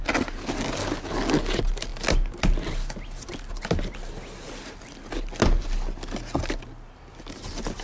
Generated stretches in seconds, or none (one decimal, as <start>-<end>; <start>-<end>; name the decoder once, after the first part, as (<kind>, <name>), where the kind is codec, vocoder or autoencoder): none